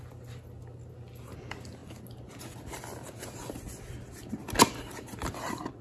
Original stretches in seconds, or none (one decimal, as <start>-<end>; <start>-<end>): 0.0-5.8